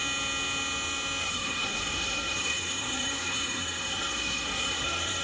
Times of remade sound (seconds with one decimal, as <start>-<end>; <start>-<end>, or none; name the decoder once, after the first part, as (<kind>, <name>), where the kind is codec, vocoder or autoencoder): 1.2-5.2 (codec, SNAC)